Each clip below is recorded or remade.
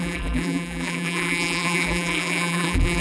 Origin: remade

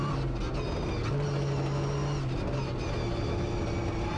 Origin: recorded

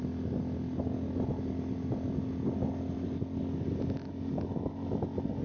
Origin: recorded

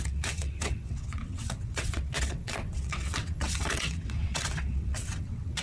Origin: remade